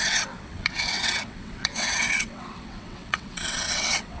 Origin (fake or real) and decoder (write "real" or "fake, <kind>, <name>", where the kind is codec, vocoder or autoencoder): fake, vocoder, WaveNeXt